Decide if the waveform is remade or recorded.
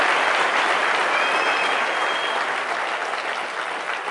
recorded